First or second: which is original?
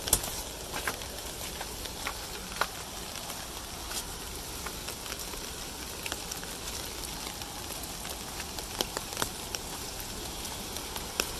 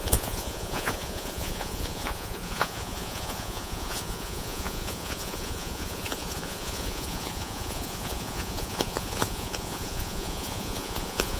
first